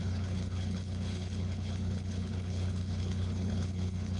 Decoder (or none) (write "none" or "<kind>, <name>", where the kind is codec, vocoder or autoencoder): codec, HILCodec